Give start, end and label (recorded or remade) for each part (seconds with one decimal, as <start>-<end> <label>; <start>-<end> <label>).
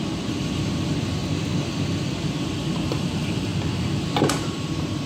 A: 0.0-1.2 remade; 1.2-2.3 recorded; 2.3-3.5 remade; 3.5-4.3 recorded; 4.3-5.1 remade